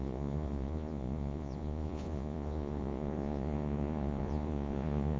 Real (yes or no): no